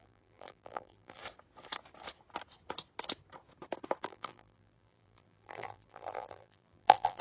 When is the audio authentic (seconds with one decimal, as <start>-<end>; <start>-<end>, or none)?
1.2-4.0